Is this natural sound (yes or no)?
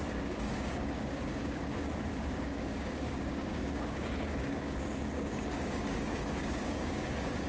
no